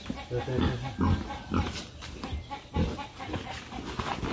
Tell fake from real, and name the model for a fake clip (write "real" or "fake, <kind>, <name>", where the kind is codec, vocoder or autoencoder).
real